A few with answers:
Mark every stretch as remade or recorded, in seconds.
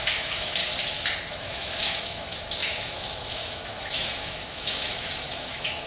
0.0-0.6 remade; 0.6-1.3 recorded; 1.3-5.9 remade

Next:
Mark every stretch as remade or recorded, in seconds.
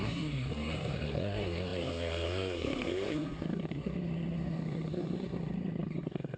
0.0-6.4 remade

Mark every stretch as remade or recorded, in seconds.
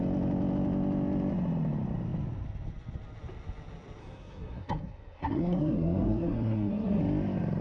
0.0-4.0 recorded; 4.0-7.0 remade; 7.0-7.6 recorded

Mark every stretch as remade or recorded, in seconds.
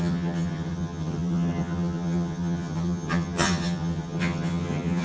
0.0-5.0 remade